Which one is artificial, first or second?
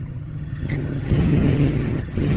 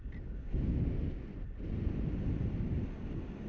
first